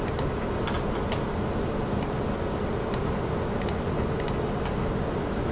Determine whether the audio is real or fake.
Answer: real